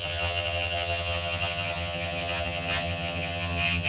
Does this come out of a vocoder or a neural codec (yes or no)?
yes